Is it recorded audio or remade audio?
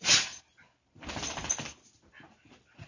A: recorded